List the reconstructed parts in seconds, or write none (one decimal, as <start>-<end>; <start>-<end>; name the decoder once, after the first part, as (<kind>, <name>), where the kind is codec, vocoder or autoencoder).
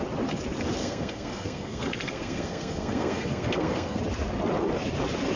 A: 0.8-4.0 (codec, SNAC)